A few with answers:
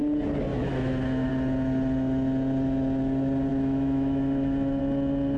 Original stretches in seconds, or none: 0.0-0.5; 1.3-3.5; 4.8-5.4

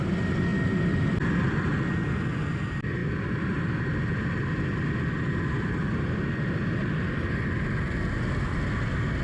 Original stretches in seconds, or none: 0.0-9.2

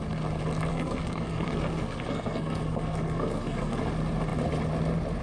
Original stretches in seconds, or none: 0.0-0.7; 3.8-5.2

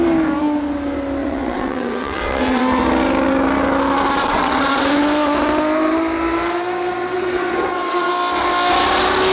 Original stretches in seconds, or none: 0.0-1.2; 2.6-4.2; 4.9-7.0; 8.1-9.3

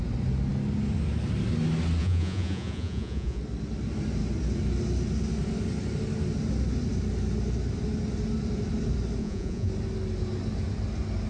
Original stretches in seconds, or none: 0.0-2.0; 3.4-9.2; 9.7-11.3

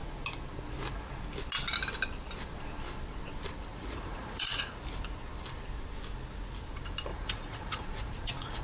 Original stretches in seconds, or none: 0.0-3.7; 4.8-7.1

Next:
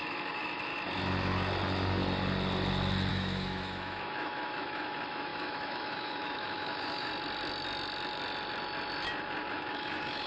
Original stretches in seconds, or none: 0.7-3.1; 7.1-9.5